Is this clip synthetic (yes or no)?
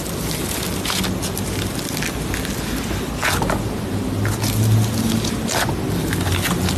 no